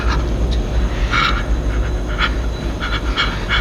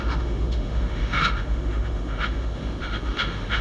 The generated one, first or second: second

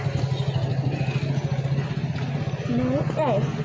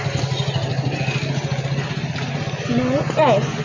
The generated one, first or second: second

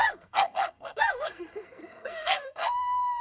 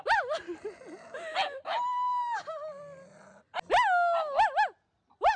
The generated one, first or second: first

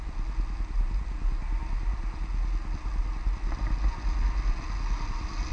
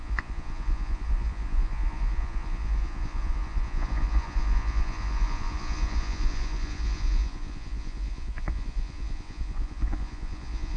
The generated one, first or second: second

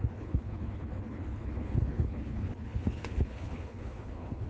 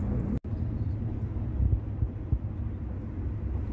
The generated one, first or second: first